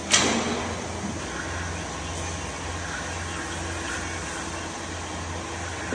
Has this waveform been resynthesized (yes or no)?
no